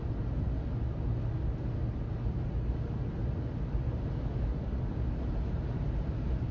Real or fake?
real